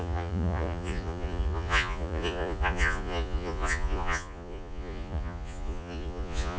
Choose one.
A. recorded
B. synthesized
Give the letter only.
B